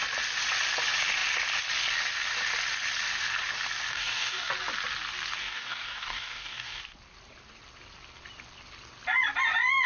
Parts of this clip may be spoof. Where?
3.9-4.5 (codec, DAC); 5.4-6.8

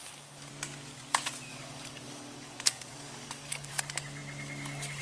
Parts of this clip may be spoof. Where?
0.0-0.5 (codec, DAC); 1.5-3.7

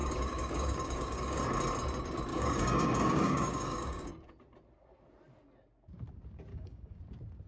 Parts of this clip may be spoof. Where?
0.0-1.4 (codec, DAC); 2.3-4.1; 6.5-7.0

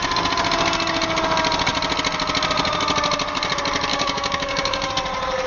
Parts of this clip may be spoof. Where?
3.9-4.9 (codec, DAC)

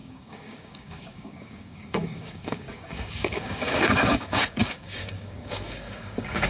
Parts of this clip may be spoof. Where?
0.0-6.5 (codec, DAC)